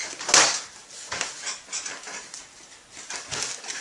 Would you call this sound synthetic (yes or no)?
no